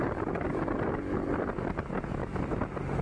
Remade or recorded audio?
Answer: recorded